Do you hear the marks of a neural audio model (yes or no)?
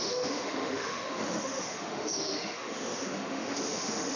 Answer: yes